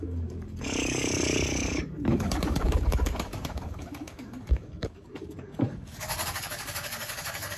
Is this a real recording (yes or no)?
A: no